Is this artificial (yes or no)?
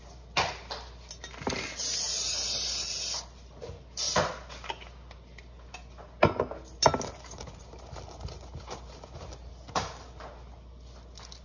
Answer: no